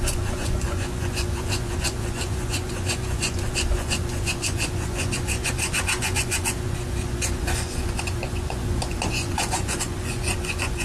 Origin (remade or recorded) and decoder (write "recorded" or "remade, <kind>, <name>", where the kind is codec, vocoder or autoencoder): remade, vocoder, Vocos